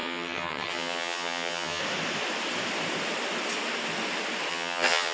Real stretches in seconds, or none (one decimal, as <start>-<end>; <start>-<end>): 1.8-4.5